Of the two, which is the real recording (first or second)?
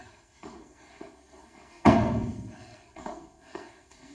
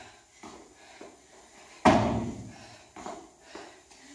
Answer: second